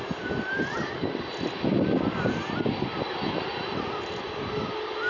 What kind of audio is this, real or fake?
real